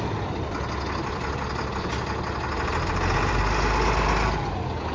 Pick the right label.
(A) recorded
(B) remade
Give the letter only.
A